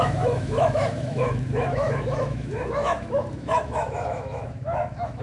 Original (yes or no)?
no